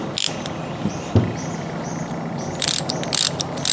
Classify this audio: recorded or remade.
recorded